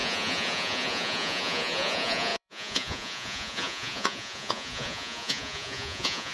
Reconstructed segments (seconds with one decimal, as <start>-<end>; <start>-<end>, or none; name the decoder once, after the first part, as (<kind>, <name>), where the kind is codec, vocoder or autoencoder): 0.0-6.3 (vocoder, Vocos)